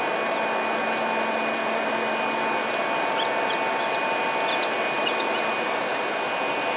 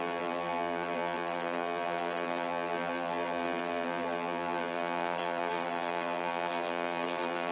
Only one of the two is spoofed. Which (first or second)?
second